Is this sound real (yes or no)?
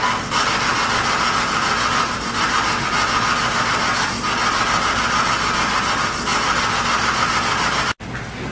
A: yes